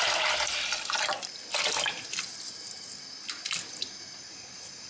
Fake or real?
real